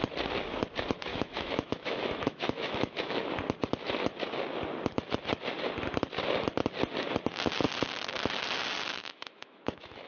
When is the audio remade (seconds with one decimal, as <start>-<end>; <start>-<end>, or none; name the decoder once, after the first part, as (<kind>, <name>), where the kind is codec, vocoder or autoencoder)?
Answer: 1.1-3.3 (autoencoder, DAC-VAE); 9.0-10.1